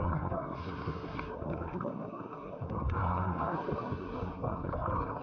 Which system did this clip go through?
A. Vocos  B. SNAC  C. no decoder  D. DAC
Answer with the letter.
B